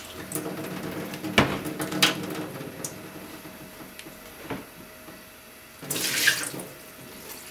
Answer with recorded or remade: recorded